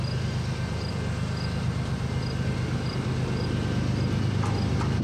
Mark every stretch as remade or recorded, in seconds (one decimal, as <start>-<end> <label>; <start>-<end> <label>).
0.0-5.0 recorded